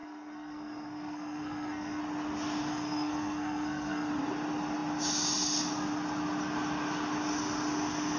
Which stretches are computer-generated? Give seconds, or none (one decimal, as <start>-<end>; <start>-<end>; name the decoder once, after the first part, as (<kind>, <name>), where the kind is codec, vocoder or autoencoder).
0.0-2.0 (codec, SNAC); 2.7-4.1